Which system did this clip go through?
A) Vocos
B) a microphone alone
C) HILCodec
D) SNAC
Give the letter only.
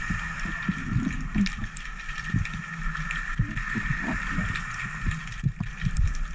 B